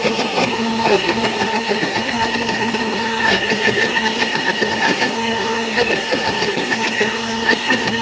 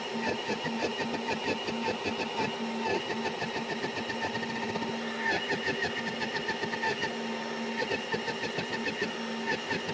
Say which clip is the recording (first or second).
second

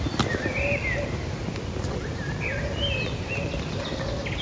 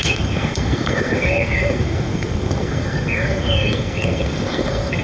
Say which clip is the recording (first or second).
first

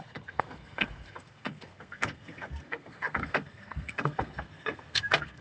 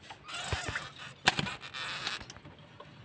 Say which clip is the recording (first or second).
second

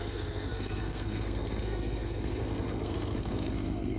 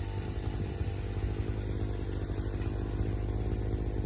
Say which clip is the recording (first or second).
second